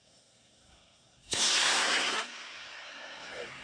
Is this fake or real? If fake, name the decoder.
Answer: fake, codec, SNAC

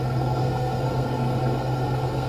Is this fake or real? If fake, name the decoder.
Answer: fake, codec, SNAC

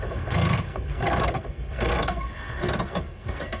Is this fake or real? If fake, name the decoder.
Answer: fake, codec, SNAC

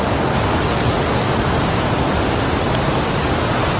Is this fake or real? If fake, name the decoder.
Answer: real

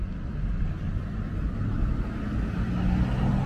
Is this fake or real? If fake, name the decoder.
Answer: real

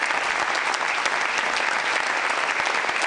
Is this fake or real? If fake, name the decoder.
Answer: real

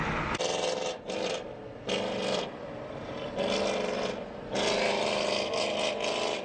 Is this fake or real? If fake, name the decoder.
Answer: real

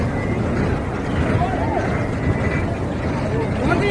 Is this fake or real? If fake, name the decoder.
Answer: real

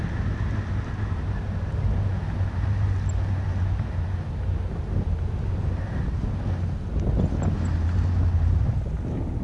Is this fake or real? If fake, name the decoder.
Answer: real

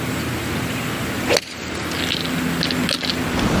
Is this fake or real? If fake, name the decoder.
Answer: real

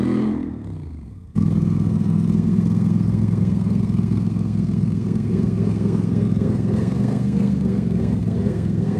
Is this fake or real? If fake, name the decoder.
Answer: fake, codec, SNAC